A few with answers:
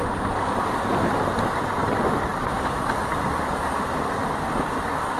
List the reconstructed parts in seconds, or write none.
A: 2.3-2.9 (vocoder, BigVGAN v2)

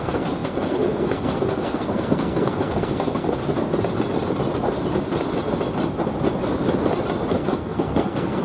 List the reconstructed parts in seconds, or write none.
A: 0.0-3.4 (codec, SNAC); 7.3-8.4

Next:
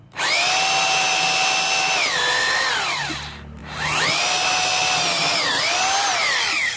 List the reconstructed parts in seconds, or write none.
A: none

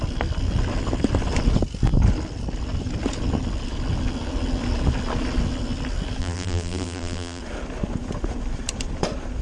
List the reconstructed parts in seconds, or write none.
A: 6.2-7.4 (vocoder, BigVGAN v2)

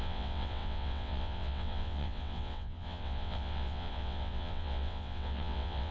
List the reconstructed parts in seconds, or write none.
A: 0.0-5.9 (vocoder, WaveNeXt)